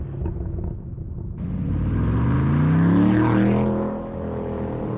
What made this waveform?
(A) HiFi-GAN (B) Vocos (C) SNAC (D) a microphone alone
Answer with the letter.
D